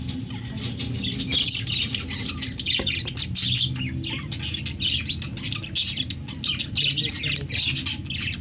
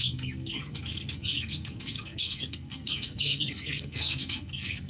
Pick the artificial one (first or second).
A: second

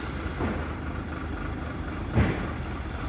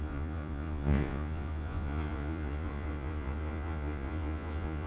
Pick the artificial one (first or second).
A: second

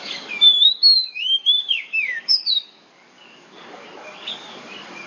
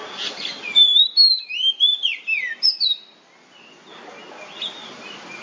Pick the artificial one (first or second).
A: first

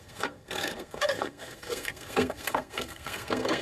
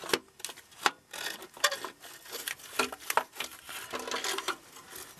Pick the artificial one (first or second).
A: first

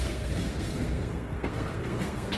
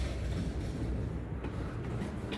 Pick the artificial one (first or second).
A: first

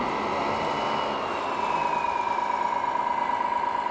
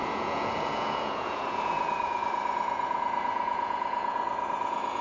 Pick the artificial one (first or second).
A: second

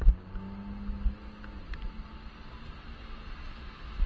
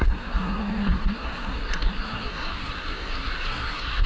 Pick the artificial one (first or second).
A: second